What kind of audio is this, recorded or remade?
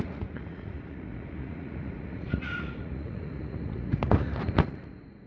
remade